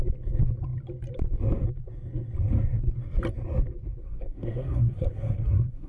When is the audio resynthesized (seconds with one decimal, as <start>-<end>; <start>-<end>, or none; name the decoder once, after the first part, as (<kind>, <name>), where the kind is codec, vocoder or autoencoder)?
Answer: 4.0-5.9 (codec, SNAC)